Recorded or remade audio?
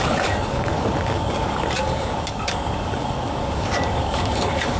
remade